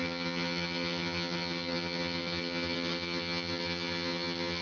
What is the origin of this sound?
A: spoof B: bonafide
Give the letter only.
A